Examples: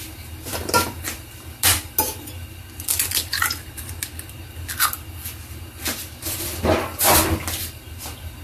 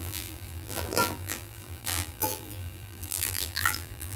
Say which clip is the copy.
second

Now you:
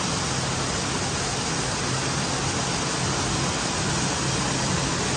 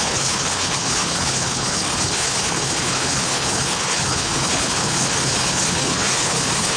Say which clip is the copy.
second